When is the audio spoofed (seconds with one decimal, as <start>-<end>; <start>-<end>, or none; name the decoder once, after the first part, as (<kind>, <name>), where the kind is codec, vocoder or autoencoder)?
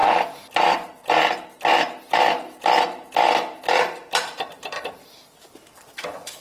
0.0-6.4 (vocoder, BigVGAN v2)